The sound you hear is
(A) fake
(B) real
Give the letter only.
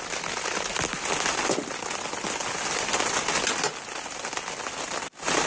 B